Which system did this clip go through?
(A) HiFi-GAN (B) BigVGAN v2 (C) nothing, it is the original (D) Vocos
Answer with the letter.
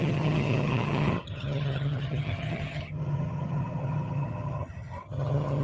A